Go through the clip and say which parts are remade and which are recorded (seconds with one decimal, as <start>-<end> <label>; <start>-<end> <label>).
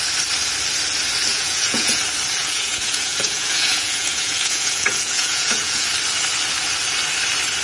0.0-1.3 recorded; 1.3-2.0 remade; 2.0-2.4 recorded; 2.4-5.9 remade; 5.9-7.6 recorded